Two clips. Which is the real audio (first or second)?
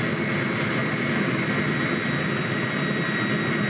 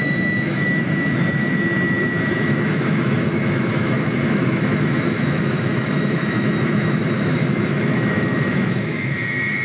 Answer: first